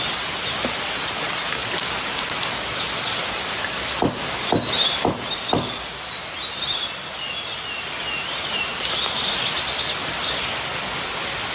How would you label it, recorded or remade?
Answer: recorded